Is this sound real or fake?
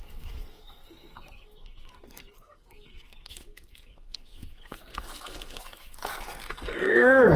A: fake